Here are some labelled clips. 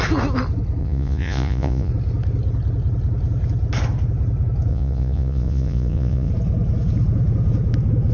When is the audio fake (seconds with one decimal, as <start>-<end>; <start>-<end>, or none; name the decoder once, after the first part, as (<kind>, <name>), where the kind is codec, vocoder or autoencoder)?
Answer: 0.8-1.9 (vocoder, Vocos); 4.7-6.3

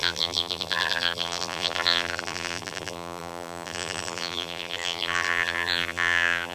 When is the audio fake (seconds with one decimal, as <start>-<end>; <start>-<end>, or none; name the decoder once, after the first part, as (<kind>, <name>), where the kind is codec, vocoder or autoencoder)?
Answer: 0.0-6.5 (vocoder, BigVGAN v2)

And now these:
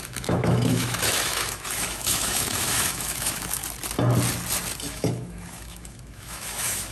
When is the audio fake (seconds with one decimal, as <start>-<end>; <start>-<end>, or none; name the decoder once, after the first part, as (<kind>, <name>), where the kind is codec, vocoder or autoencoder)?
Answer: 0.0-3.6 (autoencoder, DAC-VAE); 4.9-6.9

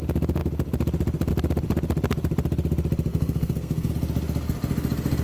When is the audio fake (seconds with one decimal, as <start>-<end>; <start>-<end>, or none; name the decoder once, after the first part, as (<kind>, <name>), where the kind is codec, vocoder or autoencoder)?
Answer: 3.1-3.9 (codec, SNAC)